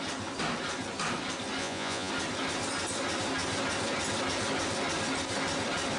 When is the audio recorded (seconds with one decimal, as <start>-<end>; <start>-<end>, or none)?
0.0-1.6; 2.1-6.0